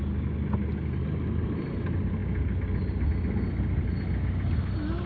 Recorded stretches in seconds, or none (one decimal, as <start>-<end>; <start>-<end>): 0.0-5.1